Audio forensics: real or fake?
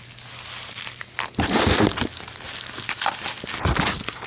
real